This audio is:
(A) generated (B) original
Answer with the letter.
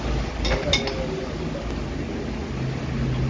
B